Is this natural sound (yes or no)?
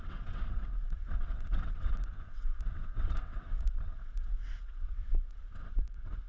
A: no